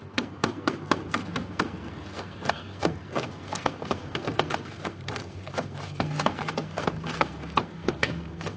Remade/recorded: remade